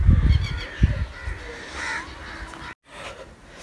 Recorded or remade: recorded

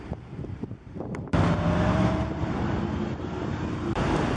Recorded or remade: remade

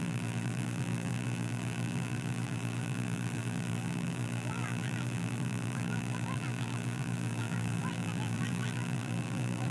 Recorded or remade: remade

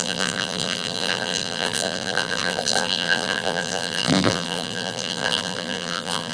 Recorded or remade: remade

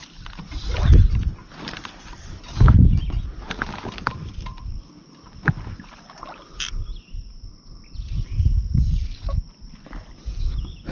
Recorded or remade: recorded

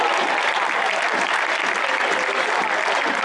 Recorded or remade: recorded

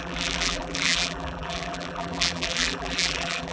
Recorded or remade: remade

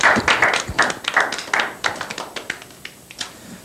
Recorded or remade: recorded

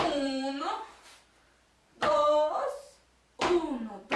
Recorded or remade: remade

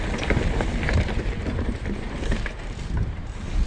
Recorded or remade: remade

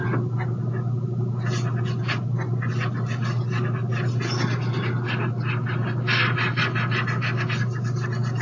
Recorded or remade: recorded